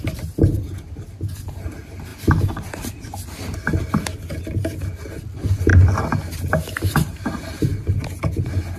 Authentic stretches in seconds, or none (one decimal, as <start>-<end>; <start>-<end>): 0.0-8.8

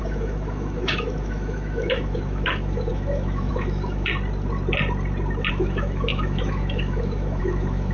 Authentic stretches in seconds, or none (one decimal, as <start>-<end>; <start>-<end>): 4.1-5.5

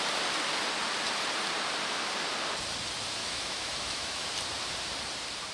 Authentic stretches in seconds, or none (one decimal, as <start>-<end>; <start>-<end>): 0.0-3.2; 4.3-5.5

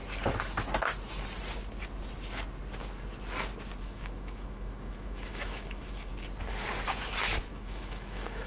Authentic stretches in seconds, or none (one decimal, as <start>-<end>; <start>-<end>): 0.0-3.8; 6.1-7.5

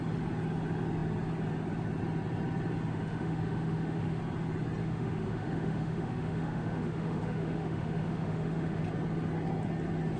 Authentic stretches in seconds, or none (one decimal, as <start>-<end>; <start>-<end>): 0.0-2.9; 4.2-4.8; 8.8-10.2

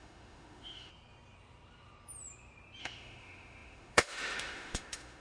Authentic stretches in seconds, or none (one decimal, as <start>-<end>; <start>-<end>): 0.9-2.8

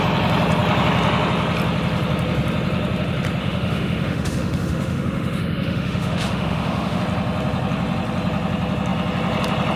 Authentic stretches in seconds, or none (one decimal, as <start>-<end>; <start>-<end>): 0.0-3.4; 7.0-9.8

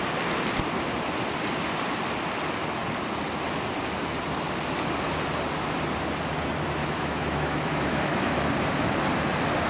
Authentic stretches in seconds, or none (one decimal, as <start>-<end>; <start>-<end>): 0.0-6.8; 8.5-9.7